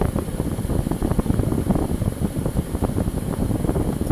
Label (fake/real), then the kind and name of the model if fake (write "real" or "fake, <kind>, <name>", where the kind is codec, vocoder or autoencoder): real